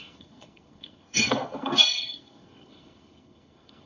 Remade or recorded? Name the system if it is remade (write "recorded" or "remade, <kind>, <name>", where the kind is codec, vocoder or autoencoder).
remade, codec, SNAC